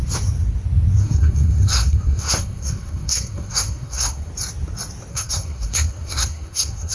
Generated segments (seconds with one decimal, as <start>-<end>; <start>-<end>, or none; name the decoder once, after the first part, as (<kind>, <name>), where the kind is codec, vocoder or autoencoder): 1.0-4.3 (codec, SNAC); 5.1-6.9